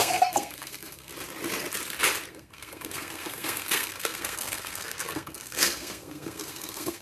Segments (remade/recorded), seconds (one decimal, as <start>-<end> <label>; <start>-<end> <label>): 0.0-1.1 remade; 1.1-2.3 recorded; 2.3-7.0 remade